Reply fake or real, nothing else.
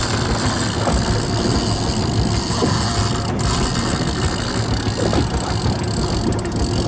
real